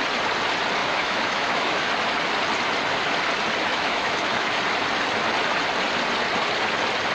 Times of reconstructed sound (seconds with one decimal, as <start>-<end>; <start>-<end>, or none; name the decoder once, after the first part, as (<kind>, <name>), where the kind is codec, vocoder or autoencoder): 0.8-1.9 (autoencoder, DAC-VAE); 3.7-4.6